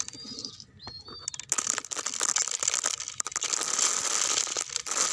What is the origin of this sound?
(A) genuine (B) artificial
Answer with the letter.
A